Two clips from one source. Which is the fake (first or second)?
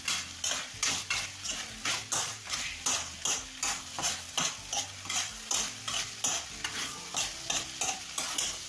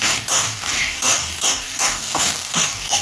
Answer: second